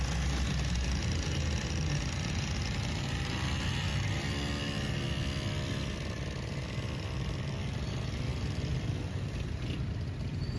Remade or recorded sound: recorded